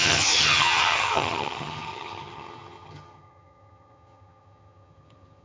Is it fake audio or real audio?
fake